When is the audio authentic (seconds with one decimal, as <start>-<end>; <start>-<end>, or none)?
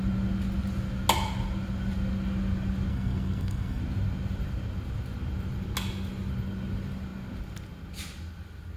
0.0-2.9; 3.8-8.8